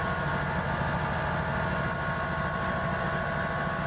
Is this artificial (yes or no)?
no